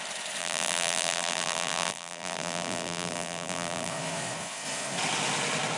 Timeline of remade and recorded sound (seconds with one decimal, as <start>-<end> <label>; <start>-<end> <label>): 0.0-0.4 recorded; 0.4-3.9 remade; 3.9-5.8 recorded